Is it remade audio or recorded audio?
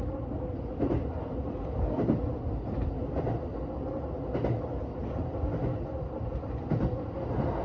recorded